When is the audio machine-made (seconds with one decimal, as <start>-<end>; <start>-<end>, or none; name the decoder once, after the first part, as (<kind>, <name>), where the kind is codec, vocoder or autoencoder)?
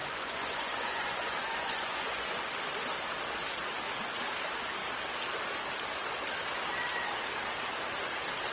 0.0-2.5 (vocoder, Vocos)